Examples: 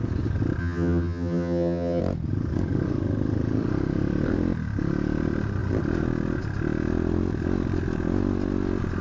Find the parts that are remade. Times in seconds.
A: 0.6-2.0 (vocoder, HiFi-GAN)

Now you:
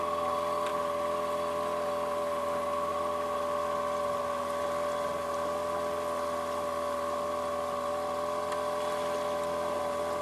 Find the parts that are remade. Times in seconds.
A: none

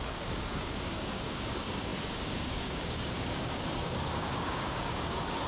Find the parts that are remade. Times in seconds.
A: 0.0-5.5 (codec, DAC)